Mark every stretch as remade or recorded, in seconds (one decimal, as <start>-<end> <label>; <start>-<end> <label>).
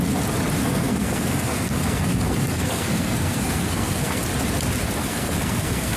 0.0-0.6 recorded; 0.6-4.2 remade; 4.2-5.0 recorded; 5.0-6.0 remade